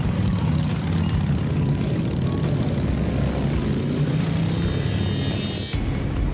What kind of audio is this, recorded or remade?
recorded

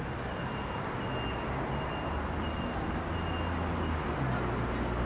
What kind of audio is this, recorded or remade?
recorded